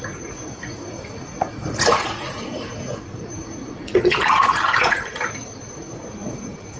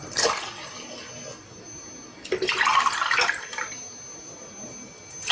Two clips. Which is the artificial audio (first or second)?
first